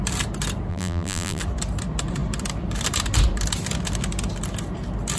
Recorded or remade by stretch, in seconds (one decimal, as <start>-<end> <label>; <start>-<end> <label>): 0.0-0.7 recorded; 0.7-1.4 remade; 1.4-5.2 recorded